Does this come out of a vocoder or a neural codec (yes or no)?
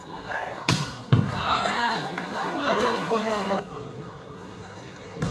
yes